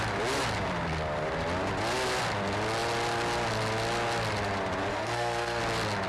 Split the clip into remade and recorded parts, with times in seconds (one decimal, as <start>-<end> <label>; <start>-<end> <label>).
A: 0.0-4.9 recorded; 4.9-5.6 remade; 5.6-6.1 recorded